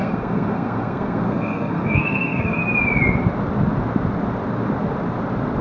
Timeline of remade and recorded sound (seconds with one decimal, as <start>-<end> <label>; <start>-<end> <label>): 0.0-2.6 remade; 2.6-5.6 recorded